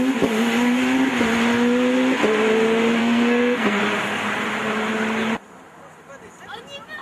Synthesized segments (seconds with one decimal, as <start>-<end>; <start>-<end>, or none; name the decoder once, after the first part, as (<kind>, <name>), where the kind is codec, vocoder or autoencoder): 3.0-3.8 (codec, SNAC)